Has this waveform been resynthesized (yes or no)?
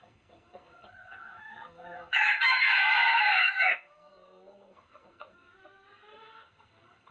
yes